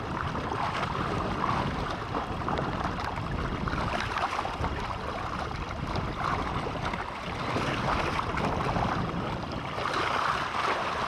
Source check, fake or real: real